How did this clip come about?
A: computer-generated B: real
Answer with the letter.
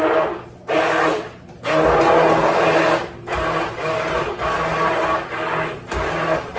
B